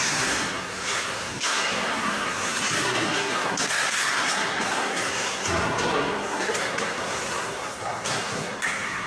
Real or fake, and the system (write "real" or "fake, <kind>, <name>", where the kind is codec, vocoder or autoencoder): fake, codec, SNAC